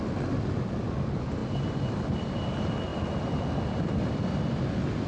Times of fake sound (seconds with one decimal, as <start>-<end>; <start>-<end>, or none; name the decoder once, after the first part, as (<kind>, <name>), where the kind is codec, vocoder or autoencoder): 2.9-4.5 (vocoder, BigVGAN v2)